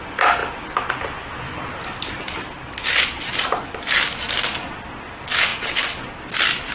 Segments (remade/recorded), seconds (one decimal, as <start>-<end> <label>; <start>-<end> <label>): 0.0-6.7 recorded